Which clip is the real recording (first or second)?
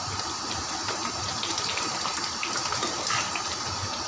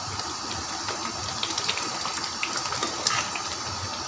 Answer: second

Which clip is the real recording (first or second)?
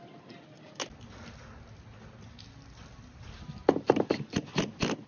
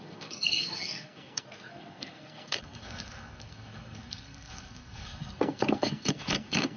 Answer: first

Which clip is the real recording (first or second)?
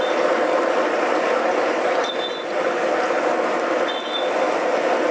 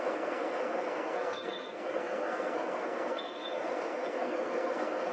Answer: first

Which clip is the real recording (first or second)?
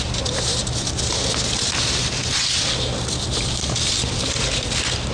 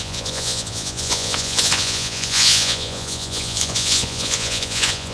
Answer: first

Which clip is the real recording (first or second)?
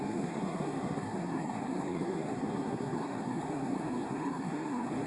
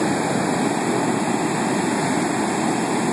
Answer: second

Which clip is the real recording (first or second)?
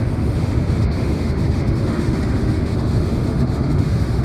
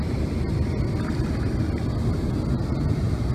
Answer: second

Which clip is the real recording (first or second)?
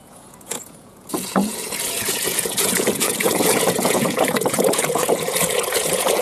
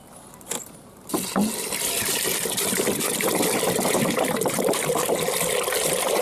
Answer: second